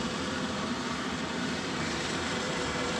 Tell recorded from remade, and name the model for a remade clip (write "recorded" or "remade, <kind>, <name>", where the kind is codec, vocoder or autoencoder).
remade, vocoder, BigVGAN v2